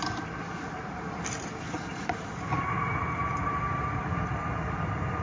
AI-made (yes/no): yes